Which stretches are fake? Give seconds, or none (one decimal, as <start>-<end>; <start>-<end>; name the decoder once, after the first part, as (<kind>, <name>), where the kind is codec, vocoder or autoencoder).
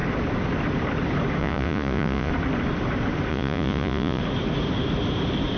1.4-2.3 (vocoder, Vocos); 3.3-4.2